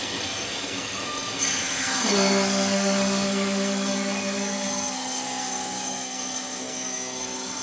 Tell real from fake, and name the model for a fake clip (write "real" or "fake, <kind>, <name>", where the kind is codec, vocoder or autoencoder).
fake, codec, SNAC